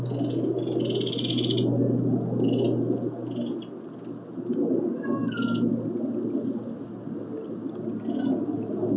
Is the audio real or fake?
real